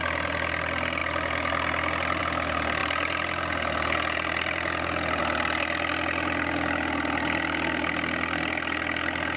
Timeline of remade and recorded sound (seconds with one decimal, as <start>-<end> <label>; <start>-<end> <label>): 0.0-9.4 recorded